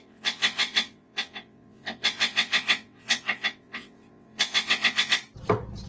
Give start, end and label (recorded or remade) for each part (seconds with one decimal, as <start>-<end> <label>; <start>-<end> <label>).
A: 0.0-5.2 remade; 5.2-5.9 recorded

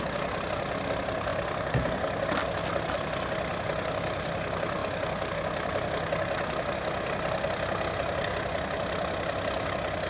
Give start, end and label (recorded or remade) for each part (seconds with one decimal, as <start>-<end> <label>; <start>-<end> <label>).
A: 0.0-10.1 recorded

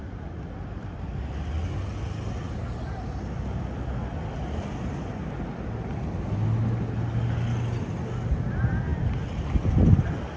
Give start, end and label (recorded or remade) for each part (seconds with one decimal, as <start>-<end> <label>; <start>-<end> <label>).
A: 0.0-10.4 recorded

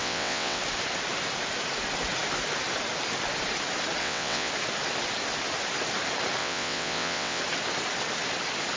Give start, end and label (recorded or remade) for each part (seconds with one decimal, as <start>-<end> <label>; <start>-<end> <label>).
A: 0.0-0.6 remade; 0.6-4.0 recorded; 4.0-4.5 remade; 4.5-6.4 recorded; 6.4-7.4 remade; 7.4-8.8 recorded

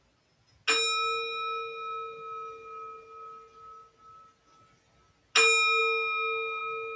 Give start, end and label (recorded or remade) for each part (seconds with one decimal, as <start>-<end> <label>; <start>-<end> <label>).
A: 0.0-7.0 recorded

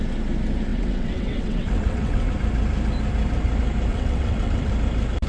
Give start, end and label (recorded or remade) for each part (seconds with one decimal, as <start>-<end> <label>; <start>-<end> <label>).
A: 0.0-0.7 recorded; 0.7-2.3 remade; 2.3-3.9 recorded; 3.9-4.7 remade; 4.7-5.3 recorded

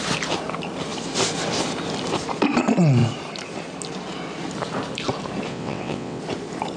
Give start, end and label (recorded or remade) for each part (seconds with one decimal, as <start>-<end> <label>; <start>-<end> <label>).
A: 0.0-5.5 recorded; 5.5-6.2 remade; 6.2-6.8 recorded